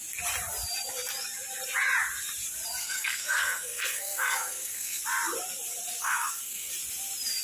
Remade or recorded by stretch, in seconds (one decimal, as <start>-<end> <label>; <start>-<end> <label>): 0.0-2.8 recorded; 2.8-5.0 remade; 5.0-6.0 recorded; 6.0-6.7 remade; 6.7-7.4 recorded